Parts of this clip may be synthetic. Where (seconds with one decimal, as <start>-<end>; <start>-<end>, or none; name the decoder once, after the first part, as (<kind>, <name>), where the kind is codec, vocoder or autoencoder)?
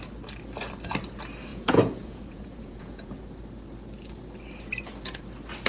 1.5-3.2 (vocoder, Vocos)